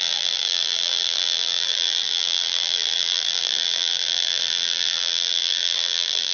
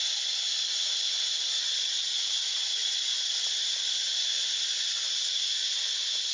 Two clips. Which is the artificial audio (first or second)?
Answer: first